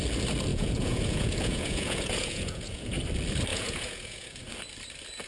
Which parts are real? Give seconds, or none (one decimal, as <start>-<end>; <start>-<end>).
0.0-0.5; 3.0-3.5; 4.4-5.3